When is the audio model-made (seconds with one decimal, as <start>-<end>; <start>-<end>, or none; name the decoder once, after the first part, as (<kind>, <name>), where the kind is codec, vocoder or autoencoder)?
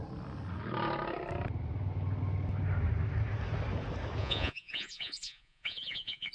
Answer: 4.2-6.3 (vocoder, Vocos)